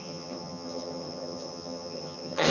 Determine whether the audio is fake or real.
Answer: fake